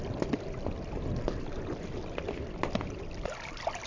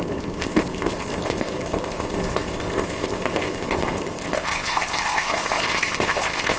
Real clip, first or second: first